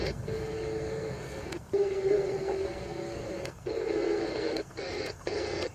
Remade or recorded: remade